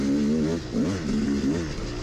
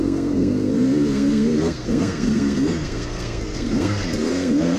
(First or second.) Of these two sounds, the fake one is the second